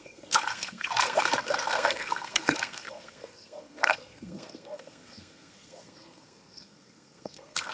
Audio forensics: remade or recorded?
remade